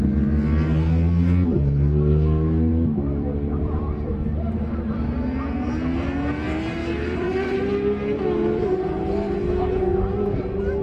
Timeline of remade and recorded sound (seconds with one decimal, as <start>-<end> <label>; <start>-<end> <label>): 0.0-2.7 recorded; 2.7-4.6 remade; 4.6-6.8 recorded; 6.8-7.7 remade; 7.7-10.8 recorded